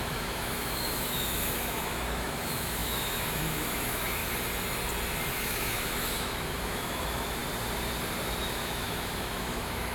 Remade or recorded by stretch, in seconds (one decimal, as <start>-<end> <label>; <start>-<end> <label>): 0.0-4.2 remade; 4.2-5.3 recorded; 5.3-7.4 remade; 7.4-8.5 recorded; 8.5-9.9 remade